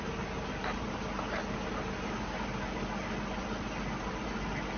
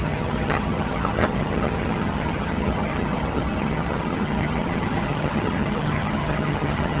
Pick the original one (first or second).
first